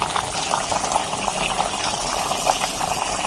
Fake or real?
real